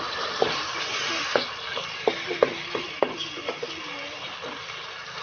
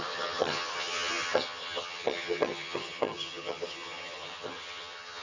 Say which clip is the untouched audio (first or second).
first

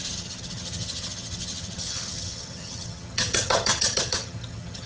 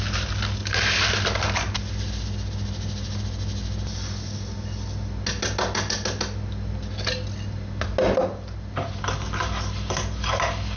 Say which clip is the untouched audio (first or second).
second